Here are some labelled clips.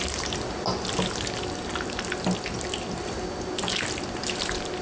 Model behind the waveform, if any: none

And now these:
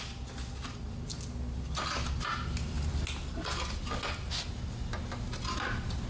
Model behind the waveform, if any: none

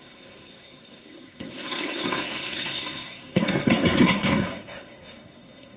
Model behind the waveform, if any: codec, SNAC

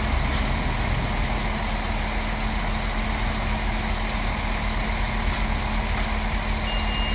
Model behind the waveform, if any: none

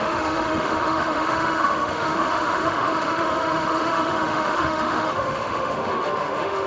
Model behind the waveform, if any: autoencoder, DAC-VAE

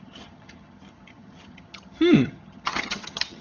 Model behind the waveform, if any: vocoder, HiFi-GAN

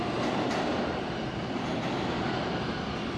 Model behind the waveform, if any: none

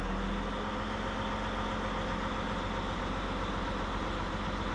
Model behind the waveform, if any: none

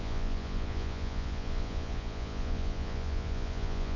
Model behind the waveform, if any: vocoder, Vocos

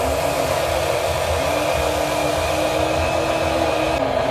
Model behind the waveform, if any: none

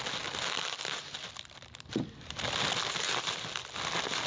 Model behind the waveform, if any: none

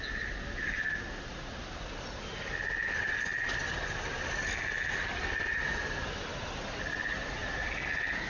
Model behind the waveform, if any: none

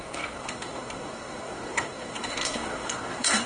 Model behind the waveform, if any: codec, SNAC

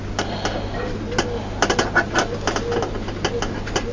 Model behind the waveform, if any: none